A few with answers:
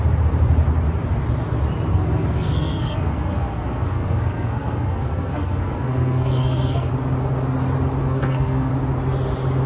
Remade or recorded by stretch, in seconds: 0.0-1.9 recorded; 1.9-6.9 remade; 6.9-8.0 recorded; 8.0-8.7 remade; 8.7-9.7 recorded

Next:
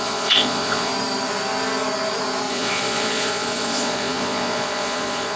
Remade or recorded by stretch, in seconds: 0.0-0.9 remade; 0.9-2.5 recorded; 2.5-5.4 remade